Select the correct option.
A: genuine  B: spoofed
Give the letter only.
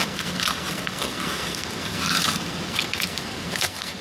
B